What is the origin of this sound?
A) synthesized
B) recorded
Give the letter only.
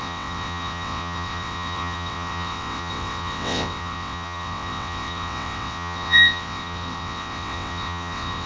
A